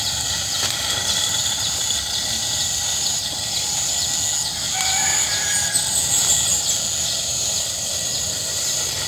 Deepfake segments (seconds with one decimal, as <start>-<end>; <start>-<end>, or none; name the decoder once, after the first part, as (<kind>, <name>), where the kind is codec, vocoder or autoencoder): 0.0-1.8 (vocoder, BigVGAN v2); 2.6-3.2; 4.7-6.5; 7.0-9.1